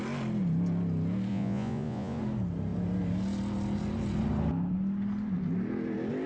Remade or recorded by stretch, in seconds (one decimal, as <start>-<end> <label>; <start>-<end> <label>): 0.0-1.3 recorded; 1.3-2.2 remade; 2.2-6.3 recorded